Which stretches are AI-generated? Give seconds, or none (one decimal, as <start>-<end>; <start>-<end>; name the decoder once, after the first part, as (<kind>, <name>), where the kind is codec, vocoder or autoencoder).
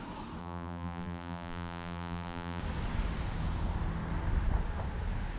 0.4-2.6 (vocoder, BigVGAN v2)